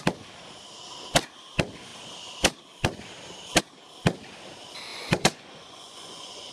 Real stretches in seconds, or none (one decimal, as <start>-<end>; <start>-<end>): 0.0-4.9